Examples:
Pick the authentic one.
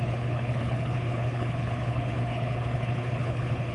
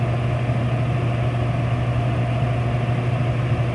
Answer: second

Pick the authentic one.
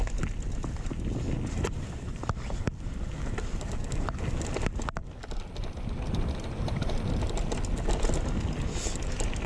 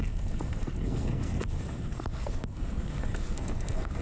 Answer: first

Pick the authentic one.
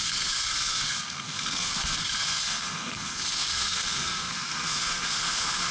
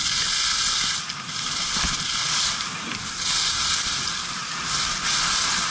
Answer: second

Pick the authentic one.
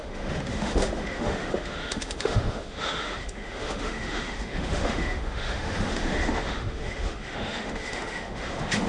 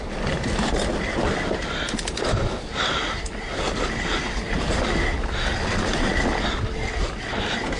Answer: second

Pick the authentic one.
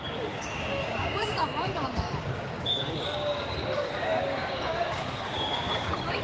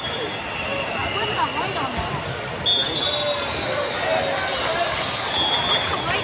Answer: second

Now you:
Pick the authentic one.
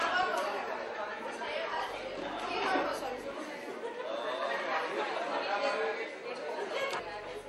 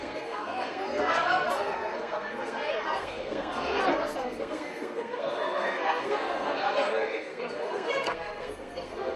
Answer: first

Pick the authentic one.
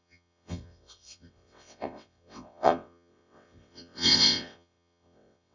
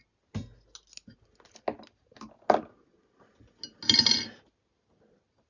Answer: second